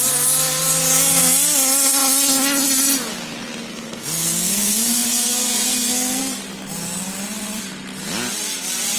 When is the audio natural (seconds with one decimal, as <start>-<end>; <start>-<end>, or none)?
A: 0.0-3.7; 6.2-9.0